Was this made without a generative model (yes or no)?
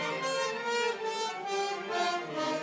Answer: yes